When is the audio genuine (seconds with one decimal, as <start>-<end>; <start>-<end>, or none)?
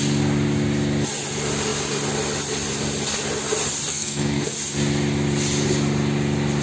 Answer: 0.0-3.9; 4.5-6.6